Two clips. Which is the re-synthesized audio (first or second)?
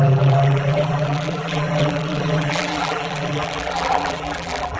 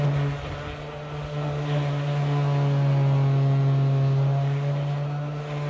first